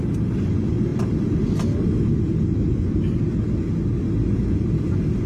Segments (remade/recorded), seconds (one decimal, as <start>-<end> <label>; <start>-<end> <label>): 0.0-5.3 recorded

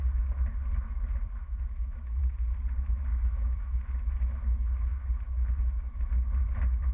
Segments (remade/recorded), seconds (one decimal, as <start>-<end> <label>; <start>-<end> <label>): 0.0-1.4 recorded; 1.4-2.2 remade; 2.2-3.1 recorded; 3.1-3.9 remade; 3.9-6.9 recorded

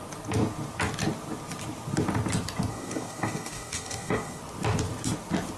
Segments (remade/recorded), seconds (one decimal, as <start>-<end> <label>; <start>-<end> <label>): 0.0-2.7 recorded; 2.7-4.4 remade; 4.4-5.6 recorded

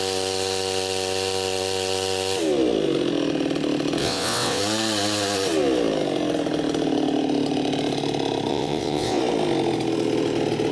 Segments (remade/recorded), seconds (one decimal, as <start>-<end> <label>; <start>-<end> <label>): 0.0-4.0 recorded; 4.0-4.6 remade; 4.6-8.5 recorded; 8.5-9.2 remade; 9.2-10.7 recorded

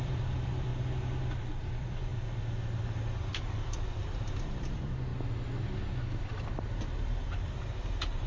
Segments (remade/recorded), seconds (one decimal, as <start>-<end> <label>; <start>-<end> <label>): 0.0-0.7 remade; 0.7-1.6 recorded; 1.6-2.1 remade; 2.1-3.0 recorded; 3.0-5.1 remade; 5.1-6.1 recorded; 6.1-8.3 remade

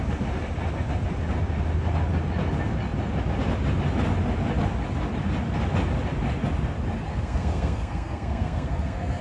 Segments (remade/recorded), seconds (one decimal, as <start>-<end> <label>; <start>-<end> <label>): 0.0-7.1 recorded; 7.1-9.2 remade

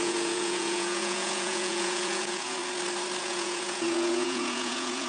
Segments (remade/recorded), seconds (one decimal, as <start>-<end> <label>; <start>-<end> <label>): 0.0-2.6 remade; 2.6-3.2 recorded; 3.2-5.1 remade